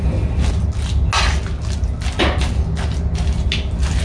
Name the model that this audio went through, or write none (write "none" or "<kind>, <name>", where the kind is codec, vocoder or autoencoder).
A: none